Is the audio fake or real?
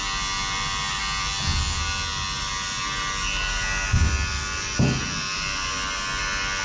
real